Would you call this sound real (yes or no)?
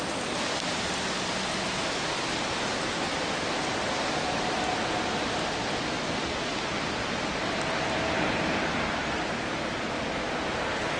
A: yes